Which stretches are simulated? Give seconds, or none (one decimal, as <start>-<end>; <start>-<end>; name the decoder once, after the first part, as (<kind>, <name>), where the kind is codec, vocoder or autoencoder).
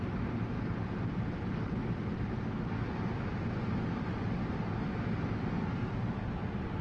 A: none